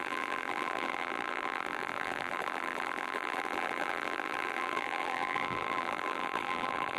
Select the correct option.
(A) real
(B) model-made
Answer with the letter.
B